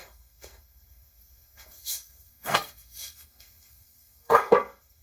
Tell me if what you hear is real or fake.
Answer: fake